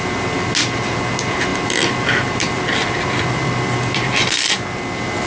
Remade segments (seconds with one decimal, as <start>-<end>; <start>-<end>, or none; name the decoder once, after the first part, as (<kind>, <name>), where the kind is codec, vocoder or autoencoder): 1.5-4.5 (vocoder, BigVGAN v2)